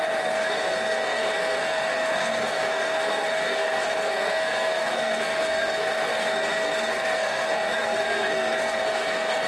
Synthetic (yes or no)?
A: yes